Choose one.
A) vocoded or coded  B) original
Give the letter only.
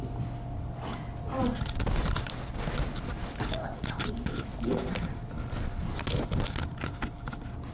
B